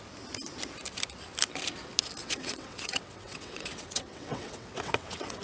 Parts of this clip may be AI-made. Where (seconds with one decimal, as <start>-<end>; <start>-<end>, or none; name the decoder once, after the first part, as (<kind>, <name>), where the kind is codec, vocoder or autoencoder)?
2.2-5.4 (vocoder, WaveNeXt)